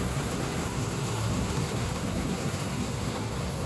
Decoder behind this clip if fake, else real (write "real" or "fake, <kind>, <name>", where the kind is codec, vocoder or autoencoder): fake, codec, SNAC